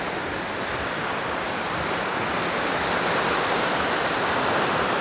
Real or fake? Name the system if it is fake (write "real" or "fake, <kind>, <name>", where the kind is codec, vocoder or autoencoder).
real